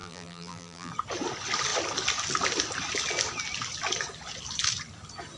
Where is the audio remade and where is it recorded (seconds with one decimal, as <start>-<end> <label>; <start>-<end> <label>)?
0.0-0.9 remade; 0.9-5.4 recorded